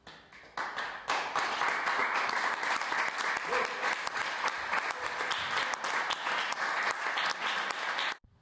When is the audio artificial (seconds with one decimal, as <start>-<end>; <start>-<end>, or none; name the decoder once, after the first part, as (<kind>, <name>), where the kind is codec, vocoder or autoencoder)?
none